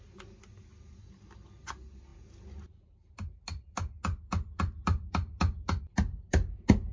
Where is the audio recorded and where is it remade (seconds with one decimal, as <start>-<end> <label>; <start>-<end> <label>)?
0.0-6.9 recorded